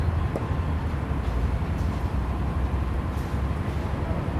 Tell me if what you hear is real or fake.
real